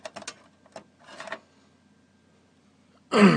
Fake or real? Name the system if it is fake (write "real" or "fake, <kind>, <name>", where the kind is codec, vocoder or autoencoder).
real